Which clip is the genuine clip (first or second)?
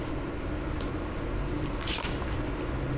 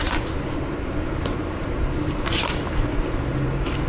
first